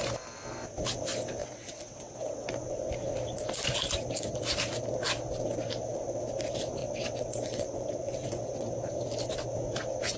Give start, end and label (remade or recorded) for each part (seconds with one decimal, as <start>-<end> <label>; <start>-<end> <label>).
0.0-1.4 recorded; 1.4-2.6 remade; 2.6-6.8 recorded; 6.8-8.7 remade; 8.7-10.2 recorded